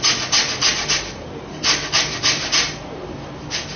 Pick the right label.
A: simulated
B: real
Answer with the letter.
B